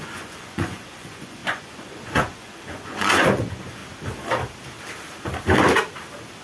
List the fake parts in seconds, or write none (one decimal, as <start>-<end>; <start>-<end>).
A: 0.0-3.8

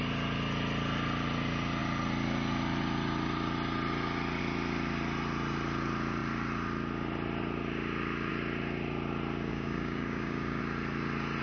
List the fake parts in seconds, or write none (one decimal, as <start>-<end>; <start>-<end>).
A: 9.5-10.6